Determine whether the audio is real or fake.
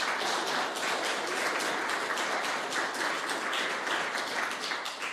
real